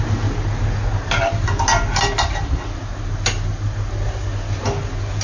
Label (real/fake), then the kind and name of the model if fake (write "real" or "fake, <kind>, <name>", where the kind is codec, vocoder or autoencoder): real